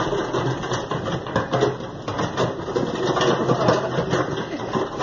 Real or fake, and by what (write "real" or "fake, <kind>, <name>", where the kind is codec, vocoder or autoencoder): real